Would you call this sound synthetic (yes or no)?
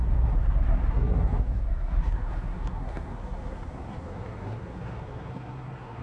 yes